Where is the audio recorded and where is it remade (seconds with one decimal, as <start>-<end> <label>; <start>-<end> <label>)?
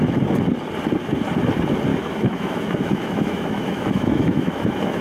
0.0-1.9 recorded; 1.9-5.0 remade